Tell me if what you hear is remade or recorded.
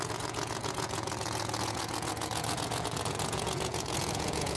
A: remade